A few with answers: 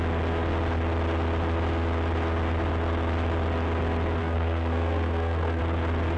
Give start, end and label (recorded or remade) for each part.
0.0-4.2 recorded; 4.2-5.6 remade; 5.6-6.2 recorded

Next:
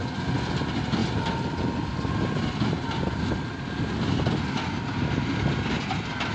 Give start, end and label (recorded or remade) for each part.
0.0-6.3 recorded

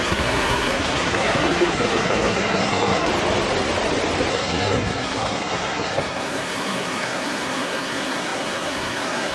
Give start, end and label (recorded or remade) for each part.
0.0-3.1 remade; 3.1-4.3 recorded; 4.3-9.3 remade

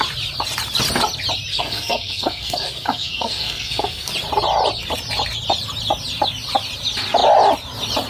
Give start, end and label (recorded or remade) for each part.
0.0-1.5 recorded; 1.5-4.1 remade; 4.1-8.1 recorded